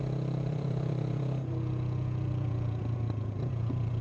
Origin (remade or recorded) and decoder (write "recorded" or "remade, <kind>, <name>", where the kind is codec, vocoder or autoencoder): remade, vocoder, Vocos